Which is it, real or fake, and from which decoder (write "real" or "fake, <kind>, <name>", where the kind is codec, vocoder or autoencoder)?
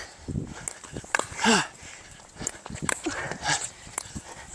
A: real